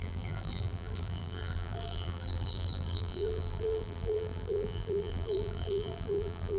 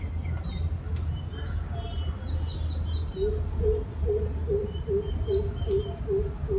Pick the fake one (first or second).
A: first